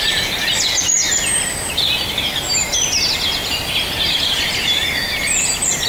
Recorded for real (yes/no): yes